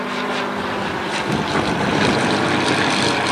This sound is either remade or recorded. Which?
remade